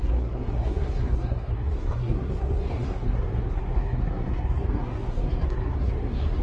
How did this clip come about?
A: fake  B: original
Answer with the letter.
A